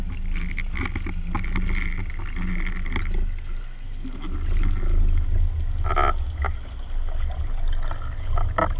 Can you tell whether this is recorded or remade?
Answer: recorded